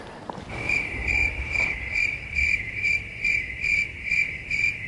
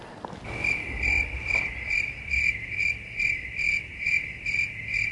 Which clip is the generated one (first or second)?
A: first